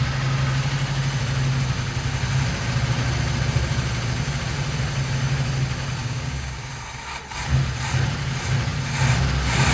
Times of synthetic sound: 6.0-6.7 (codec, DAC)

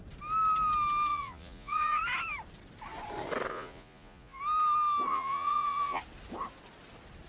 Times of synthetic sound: 1.1-2.0 (vocoder, Vocos); 3.5-4.4; 5.1-6.0

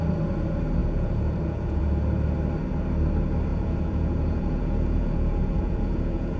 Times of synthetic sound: 0.8-1.8 (vocoder, Vocos); 3.5-6.4

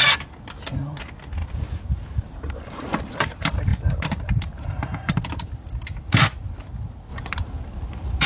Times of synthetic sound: 1.4-3.0 (vocoder, BigVGAN v2); 3.7-5.2; 7.1-8.3

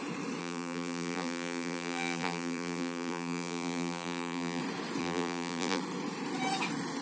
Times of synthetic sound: 0.4-4.6 (vocoder, BigVGAN v2); 5.0-5.8